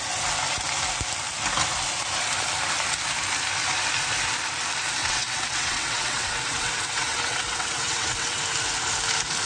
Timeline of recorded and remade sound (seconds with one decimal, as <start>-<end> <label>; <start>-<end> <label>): 0.0-5.0 recorded; 5.0-8.4 remade; 8.4-9.5 recorded